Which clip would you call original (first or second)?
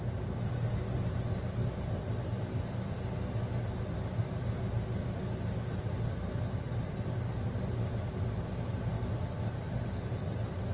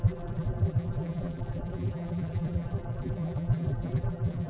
first